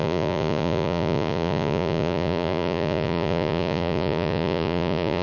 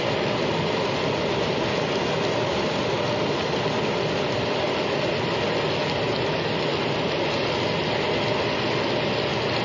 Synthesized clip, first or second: first